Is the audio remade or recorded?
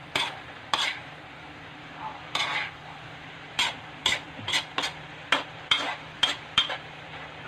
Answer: remade